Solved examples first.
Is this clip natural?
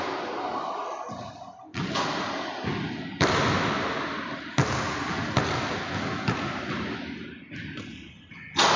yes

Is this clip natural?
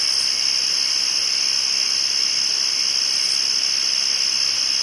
yes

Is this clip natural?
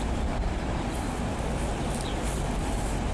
yes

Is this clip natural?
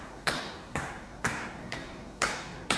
no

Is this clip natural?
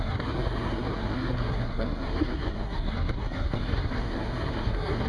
no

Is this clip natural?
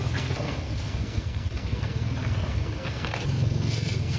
no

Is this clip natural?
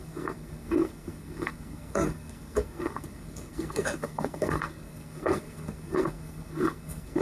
no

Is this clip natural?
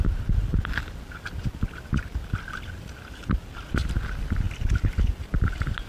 yes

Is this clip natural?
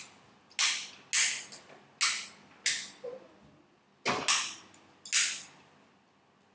yes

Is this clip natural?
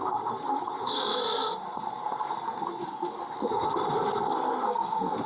no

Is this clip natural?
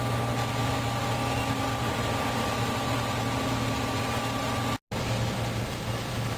yes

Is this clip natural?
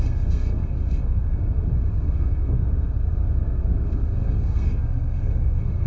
no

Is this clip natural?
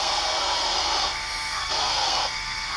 no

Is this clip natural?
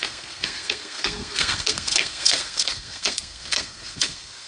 no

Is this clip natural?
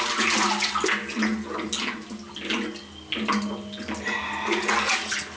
yes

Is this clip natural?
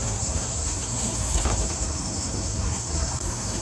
no